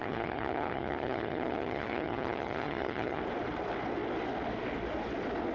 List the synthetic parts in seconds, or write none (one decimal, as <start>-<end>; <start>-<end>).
0.0-3.2